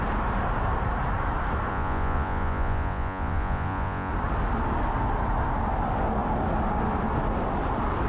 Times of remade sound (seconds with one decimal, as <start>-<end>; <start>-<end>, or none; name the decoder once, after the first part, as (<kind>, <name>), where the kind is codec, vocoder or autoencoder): 1.7-4.1 (vocoder, Vocos)

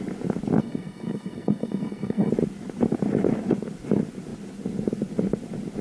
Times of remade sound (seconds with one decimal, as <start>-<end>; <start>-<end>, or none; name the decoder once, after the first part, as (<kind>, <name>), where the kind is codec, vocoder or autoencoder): 0.6-2.3 (codec, SNAC)

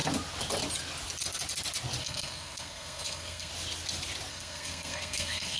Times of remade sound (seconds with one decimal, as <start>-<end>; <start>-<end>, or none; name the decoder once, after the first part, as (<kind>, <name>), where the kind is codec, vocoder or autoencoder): 2.0-3.5 (codec, SNAC); 4.3-5.6

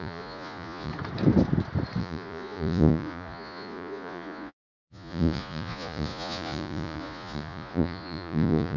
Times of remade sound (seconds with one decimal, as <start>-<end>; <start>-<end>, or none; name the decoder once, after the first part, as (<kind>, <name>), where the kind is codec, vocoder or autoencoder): 0.0-0.9 (vocoder, Vocos); 2.0-8.8